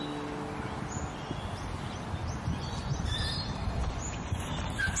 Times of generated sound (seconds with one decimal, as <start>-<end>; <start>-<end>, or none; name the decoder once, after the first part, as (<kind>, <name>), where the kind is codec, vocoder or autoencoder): 2.2-3.0 (vocoder, Vocos); 3.8-4.5

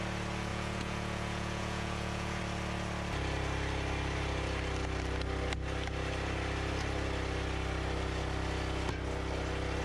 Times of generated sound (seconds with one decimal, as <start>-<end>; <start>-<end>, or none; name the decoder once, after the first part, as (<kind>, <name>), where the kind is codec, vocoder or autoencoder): 0.5-2.4 (vocoder, Vocos)

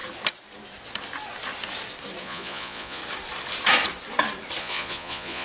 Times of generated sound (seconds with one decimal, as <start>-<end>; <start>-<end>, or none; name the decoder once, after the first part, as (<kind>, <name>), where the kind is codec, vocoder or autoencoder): 2.2-3.0 (vocoder, Vocos); 4.6-5.4

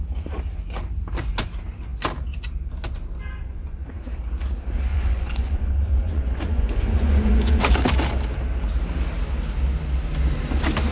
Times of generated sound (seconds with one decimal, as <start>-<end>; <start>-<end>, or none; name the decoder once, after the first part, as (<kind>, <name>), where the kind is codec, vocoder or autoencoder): 3.4-4.0 (vocoder, Vocos); 4.9-7.6

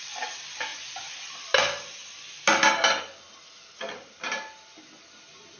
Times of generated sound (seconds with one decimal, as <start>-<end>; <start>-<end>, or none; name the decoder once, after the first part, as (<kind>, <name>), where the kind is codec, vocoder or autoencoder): none